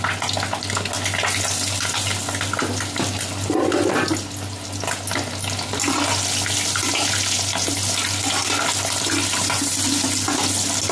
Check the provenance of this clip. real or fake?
real